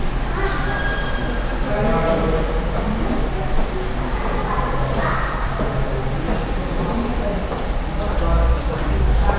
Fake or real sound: real